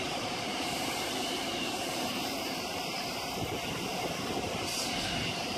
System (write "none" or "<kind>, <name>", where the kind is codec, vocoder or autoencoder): vocoder, BigVGAN v2